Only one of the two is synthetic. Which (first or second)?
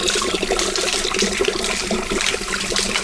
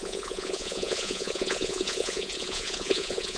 second